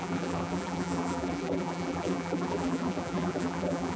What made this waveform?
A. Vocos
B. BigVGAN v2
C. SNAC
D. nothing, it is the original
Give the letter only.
B